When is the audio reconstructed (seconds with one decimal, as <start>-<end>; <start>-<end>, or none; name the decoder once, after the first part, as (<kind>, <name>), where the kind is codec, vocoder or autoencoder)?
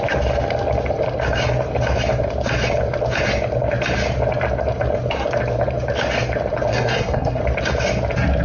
6.7-7.4 (codec, SNAC)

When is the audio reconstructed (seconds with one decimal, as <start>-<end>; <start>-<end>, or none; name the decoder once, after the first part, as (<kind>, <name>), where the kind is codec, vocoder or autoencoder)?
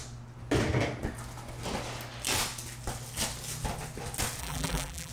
4.4-5.1 (vocoder, BigVGAN v2)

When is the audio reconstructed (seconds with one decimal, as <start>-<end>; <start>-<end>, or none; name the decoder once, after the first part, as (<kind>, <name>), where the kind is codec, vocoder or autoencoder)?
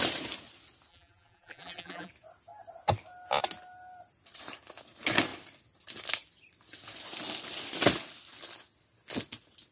0.9-2.1 (vocoder, BigVGAN v2)